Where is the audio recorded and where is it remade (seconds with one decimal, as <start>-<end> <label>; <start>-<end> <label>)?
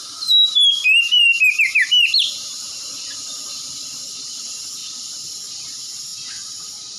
0.0-6.1 remade; 6.1-6.6 recorded; 6.6-7.0 remade